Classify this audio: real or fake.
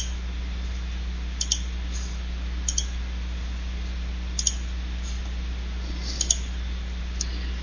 real